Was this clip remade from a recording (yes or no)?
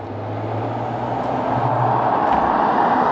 no